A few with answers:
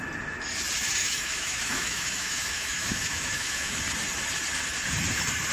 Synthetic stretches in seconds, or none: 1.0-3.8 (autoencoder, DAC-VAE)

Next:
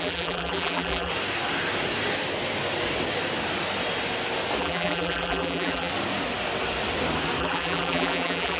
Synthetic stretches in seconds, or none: 0.0-1.1 (vocoder, BigVGAN v2); 4.6-5.9; 7.4-8.6

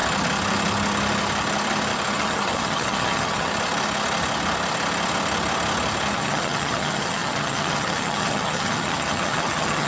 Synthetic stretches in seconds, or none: 2.1-3.5 (vocoder, HiFi-GAN); 6.1-9.9

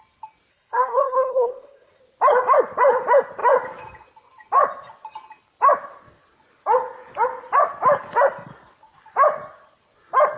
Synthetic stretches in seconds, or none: 0.5-2.0 (codec, SNAC)

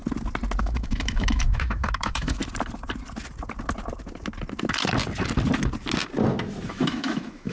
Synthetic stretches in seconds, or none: 0.6-2.4 (autoencoder, DAC-VAE); 6.7-7.5

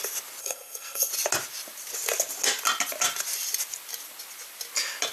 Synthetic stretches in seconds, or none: 0.4-1.1 (codec, SNAC)

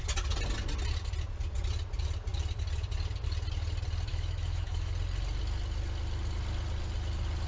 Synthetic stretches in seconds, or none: 4.1-4.9 (autoencoder, DAC-VAE)

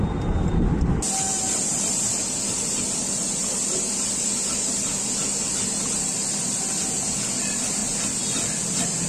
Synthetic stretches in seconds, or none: 1.7-3.2 (vocoder, BigVGAN v2)